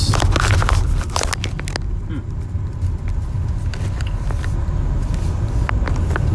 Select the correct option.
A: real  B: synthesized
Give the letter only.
A